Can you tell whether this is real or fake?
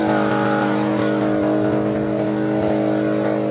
real